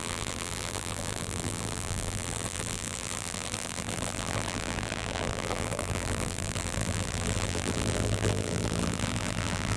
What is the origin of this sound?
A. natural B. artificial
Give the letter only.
B